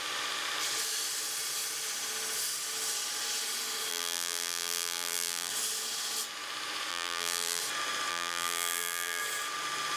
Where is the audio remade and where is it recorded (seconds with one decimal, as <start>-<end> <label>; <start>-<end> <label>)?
0.0-3.9 recorded; 3.9-5.5 remade; 5.5-6.9 recorded; 6.9-7.6 remade; 7.6-8.1 recorded; 8.1-9.2 remade; 9.2-10.0 recorded